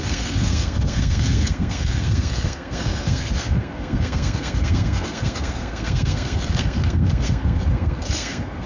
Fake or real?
fake